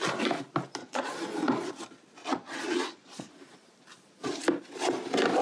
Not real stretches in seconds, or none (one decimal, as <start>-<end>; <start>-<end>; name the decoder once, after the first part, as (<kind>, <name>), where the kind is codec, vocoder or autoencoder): 0.8-1.7 (vocoder, Vocos); 2.2-3.3